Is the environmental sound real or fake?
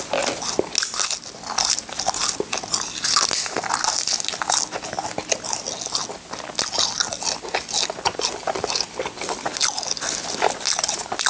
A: real